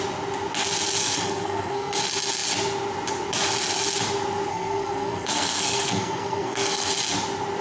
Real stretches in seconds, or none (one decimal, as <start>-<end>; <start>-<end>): 0.0-1.0; 2.0-4.5; 6.9-7.6